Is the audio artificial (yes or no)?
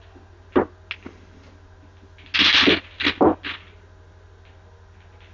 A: no